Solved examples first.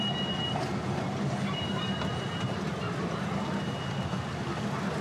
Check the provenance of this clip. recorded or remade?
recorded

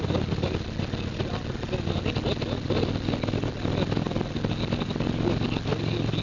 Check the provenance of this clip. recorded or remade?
recorded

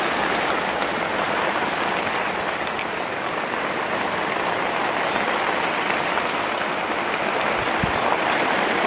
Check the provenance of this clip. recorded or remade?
remade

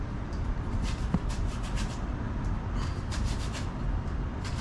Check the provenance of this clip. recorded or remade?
remade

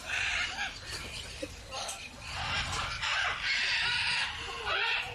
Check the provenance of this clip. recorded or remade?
recorded